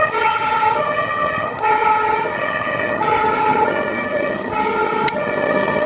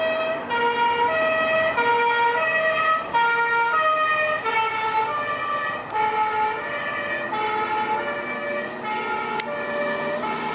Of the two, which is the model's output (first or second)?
first